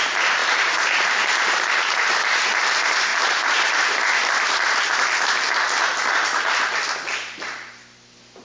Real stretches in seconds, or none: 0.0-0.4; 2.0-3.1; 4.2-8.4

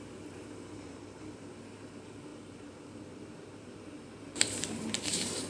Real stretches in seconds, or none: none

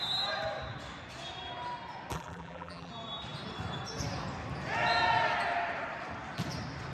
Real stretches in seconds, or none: 0.0-2.1; 2.9-6.9

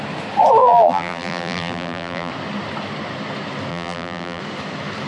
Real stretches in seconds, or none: 0.0-0.6; 2.3-3.7; 4.4-5.1